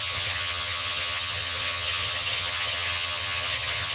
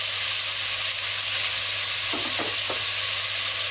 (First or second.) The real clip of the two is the second